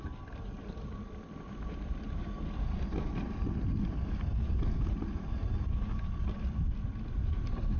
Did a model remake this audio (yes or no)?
no